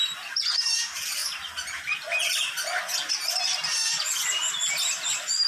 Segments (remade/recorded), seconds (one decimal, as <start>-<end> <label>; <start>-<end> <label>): 0.0-5.5 recorded